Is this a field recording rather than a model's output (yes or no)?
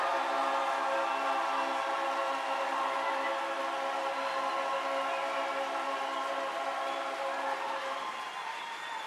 yes